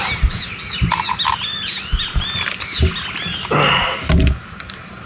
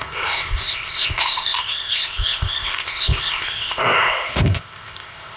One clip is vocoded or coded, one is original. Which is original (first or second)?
first